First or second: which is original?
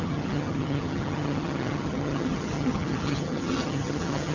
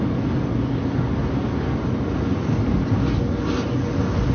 second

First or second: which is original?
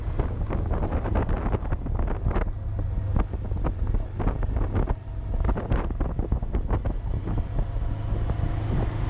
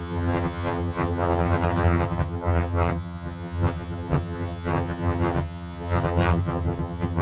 first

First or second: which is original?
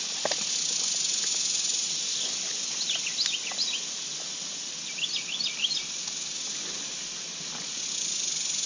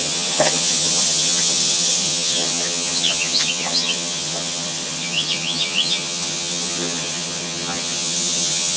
first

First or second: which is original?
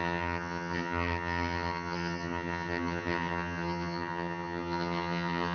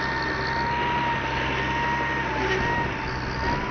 second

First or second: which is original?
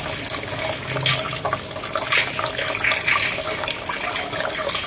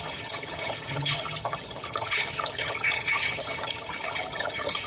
first